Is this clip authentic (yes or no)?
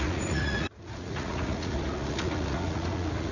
no